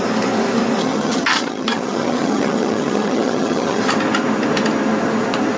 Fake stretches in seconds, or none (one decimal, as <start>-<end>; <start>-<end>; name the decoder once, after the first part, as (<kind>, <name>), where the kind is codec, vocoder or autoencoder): 0.8-3.8 (vocoder, HiFi-GAN)